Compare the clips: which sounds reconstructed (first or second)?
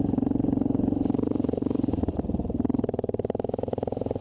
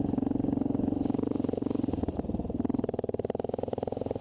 first